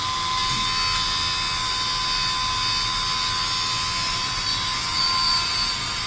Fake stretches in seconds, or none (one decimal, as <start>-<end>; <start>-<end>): 0.0-0.4; 4.1-4.5; 5.0-6.1